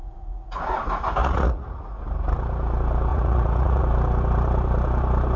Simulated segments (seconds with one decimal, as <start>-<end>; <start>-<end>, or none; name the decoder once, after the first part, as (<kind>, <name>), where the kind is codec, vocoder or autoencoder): 0.0-0.6 (vocoder, Vocos); 1.2-2.0; 3.1-3.8